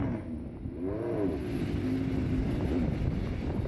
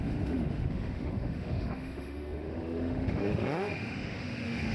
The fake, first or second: second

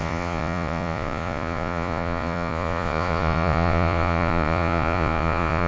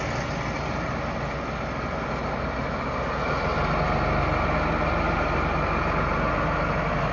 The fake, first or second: first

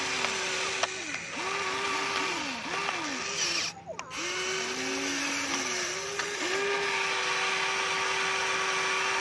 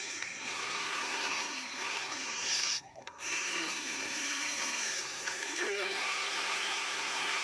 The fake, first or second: second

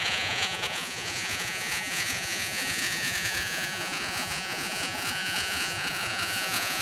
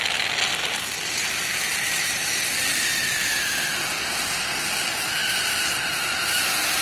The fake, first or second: first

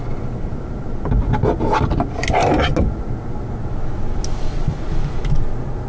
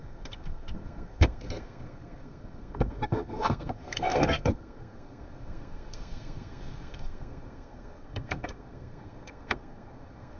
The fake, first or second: second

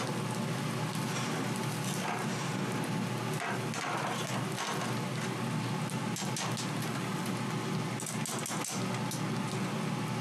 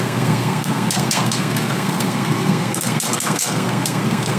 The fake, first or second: second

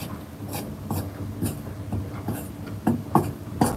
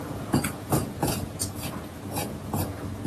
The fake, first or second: second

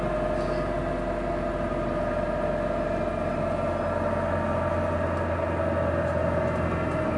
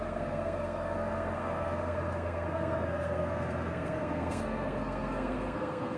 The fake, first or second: second